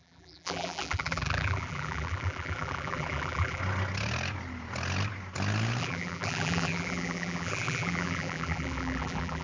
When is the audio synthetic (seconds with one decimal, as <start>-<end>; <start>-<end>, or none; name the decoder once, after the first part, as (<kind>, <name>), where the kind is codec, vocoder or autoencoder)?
0.0-3.6 (vocoder, BigVGAN v2); 5.8-9.4